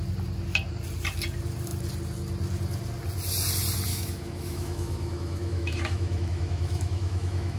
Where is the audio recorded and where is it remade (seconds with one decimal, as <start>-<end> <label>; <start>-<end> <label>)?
0.0-3.9 recorded; 3.9-7.6 remade

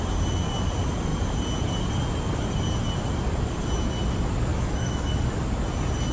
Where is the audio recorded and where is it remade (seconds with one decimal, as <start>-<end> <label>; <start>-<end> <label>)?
0.0-4.5 recorded; 4.5-5.1 remade; 5.1-6.1 recorded

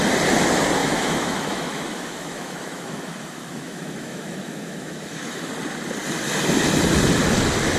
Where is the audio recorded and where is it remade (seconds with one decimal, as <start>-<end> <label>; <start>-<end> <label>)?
0.0-0.8 recorded; 0.8-5.5 remade; 5.5-7.8 recorded

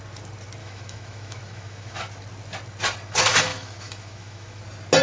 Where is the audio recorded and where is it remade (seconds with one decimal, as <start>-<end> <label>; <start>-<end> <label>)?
0.0-0.6 recorded; 0.6-2.0 remade; 2.0-3.5 recorded; 3.5-4.6 remade; 4.6-5.0 recorded

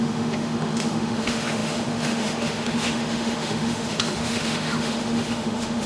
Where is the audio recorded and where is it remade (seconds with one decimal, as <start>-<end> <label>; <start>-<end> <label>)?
0.0-5.9 remade

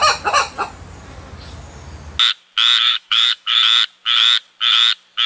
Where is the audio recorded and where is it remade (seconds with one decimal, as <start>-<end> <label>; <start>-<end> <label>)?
0.0-2.9 recorded; 2.9-3.5 remade; 3.5-5.3 recorded

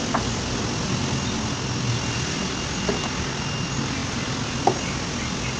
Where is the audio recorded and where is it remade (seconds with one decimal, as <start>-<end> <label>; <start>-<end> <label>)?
0.0-5.6 recorded

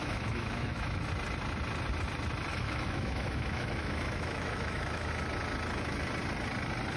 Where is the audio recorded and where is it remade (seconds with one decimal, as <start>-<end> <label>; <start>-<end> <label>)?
0.0-1.0 remade; 1.0-2.5 recorded; 2.5-5.1 remade; 5.1-7.0 recorded